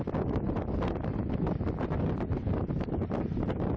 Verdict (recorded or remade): recorded